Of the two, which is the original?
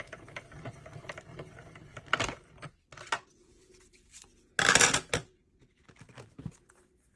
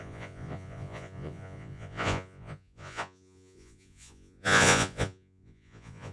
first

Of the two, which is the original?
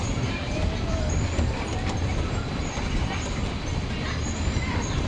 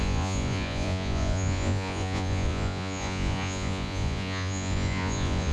first